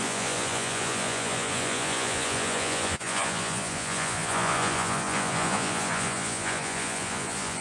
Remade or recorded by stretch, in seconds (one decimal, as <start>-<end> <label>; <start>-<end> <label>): 0.0-7.6 remade